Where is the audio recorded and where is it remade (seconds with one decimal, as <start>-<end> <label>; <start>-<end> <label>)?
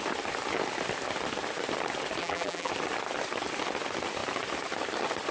0.0-2.2 recorded; 2.2-2.7 remade; 2.7-5.3 recorded